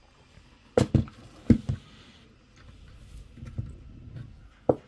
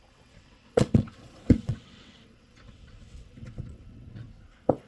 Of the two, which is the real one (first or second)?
first